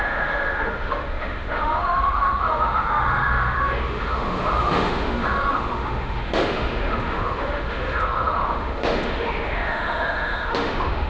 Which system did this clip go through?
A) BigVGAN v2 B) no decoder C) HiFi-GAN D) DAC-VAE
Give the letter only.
D